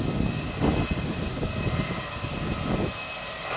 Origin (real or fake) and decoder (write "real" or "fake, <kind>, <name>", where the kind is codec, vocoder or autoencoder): real